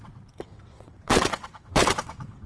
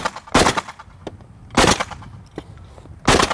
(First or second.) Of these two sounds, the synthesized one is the first